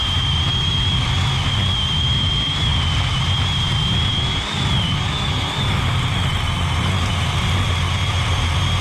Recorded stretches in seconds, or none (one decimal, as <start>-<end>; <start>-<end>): 0.0-8.8